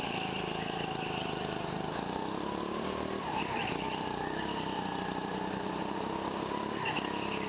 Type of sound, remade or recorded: recorded